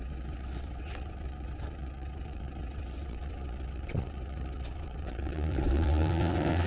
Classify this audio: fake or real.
fake